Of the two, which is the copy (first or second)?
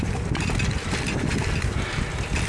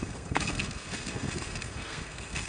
second